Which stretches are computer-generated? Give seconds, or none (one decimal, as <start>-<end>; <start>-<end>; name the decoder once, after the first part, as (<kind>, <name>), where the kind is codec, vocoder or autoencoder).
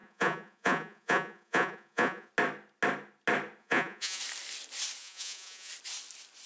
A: 0.0-2.3 (vocoder, Vocos); 3.6-4.2; 5.0-5.7